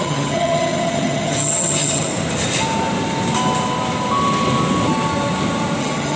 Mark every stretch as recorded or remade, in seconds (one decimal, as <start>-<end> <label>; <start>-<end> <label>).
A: 0.0-2.1 remade; 2.1-5.8 recorded; 5.8-6.2 remade